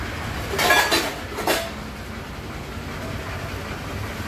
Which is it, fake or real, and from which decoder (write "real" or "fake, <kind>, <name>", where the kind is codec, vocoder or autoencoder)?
real